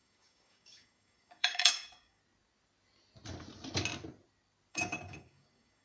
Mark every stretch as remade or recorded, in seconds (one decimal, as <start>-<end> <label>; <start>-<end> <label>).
0.0-2.2 remade; 2.2-4.7 recorded; 4.7-5.8 remade